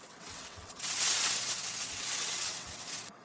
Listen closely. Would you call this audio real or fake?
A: fake